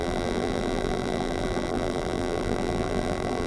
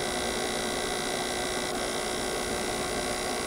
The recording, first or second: second